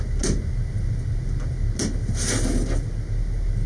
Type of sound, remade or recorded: recorded